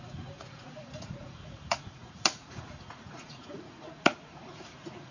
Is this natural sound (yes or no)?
no